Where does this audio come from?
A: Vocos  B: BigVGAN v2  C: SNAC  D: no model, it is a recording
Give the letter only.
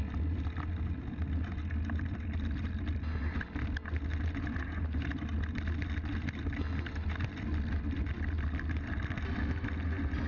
D